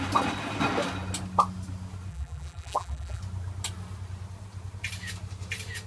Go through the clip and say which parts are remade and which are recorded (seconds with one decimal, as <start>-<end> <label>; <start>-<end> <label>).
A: 0.0-2.1 recorded; 2.1-3.2 remade; 3.2-5.9 recorded